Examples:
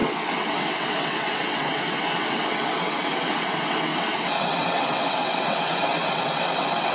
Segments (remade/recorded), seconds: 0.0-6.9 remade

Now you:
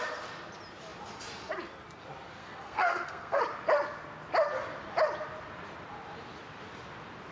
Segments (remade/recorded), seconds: 0.0-2.4 recorded; 2.4-3.4 remade; 3.4-7.3 recorded

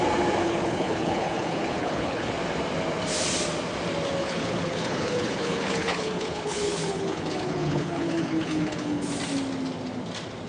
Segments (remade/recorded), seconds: 0.0-0.4 recorded; 0.4-2.3 remade; 2.3-4.2 recorded; 4.2-9.1 remade; 9.1-10.5 recorded

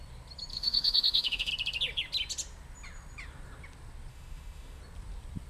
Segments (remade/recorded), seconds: 0.0-0.5 recorded; 0.5-1.5 remade; 1.5-4.1 recorded; 4.1-4.8 remade; 4.8-5.5 recorded

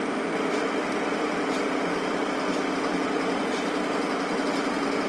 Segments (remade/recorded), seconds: 0.0-5.1 recorded